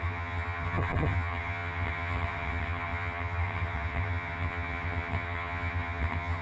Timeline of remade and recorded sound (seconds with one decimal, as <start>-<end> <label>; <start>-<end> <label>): 0.0-6.4 remade

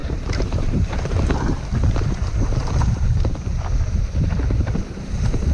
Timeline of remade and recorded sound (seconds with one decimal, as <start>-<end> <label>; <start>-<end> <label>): 0.0-3.3 remade; 3.3-5.5 recorded

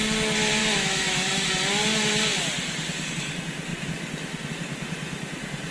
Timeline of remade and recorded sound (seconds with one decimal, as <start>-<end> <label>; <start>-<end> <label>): 0.0-0.6 recorded; 0.6-1.5 remade; 1.5-5.7 recorded

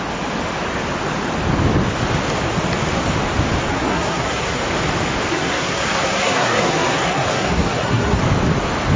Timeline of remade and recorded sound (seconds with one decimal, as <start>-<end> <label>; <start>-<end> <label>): 0.0-3.7 recorded; 3.7-4.6 remade; 4.6-5.3 recorded; 5.3-8.2 remade; 8.2-9.0 recorded